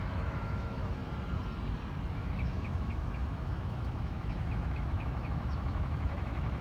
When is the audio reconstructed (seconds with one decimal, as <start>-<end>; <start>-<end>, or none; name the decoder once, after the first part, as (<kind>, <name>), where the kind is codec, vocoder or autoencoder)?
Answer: 0.0-1.0 (autoencoder, DAC-VAE); 2.1-6.6